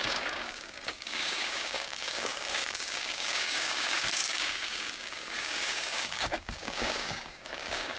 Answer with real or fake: fake